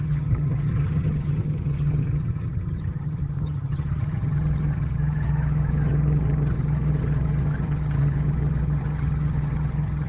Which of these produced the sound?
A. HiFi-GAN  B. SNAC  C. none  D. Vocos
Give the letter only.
A